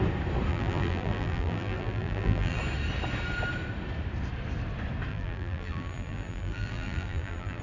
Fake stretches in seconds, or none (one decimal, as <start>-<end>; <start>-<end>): 0.5-2.6; 5.1-7.6